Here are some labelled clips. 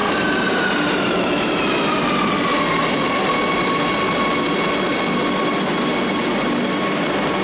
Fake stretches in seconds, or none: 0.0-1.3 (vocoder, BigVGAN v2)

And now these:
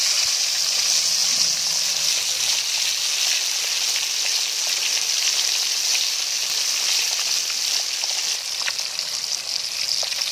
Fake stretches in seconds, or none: none

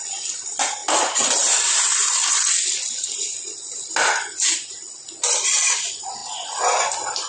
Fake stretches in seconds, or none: none

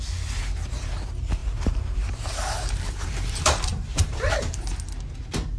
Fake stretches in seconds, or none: 1.4-4.8 (vocoder, BigVGAN v2)

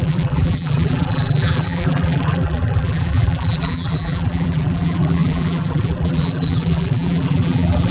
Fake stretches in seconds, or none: 0.0-7.9 (vocoder, BigVGAN v2)